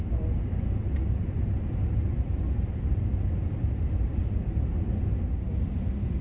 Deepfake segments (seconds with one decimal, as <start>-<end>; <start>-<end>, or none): none